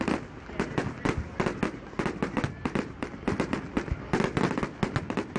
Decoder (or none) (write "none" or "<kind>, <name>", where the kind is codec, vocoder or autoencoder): none